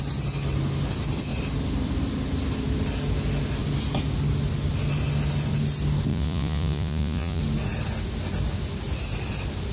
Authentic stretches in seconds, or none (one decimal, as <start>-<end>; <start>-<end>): 0.0-6.1; 7.4-9.7